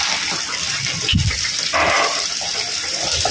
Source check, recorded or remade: remade